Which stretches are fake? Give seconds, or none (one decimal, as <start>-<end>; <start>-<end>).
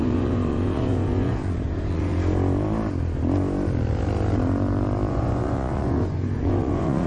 0.0-2.1; 5.1-7.1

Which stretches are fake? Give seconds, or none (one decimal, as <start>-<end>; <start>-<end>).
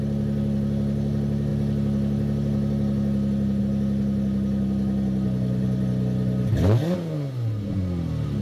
none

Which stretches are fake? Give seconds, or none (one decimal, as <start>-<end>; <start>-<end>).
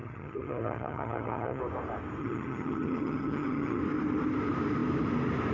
0.0-1.6; 2.2-3.8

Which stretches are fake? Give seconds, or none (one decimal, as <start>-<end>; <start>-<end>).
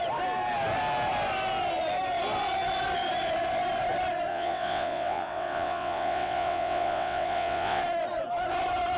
4.3-7.8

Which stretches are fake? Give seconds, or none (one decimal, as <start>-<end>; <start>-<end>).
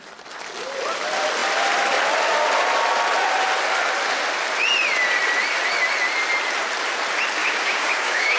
7.4-8.4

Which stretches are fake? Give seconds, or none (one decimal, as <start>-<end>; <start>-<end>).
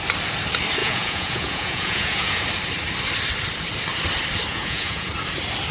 0.8-2.4; 4.5-5.1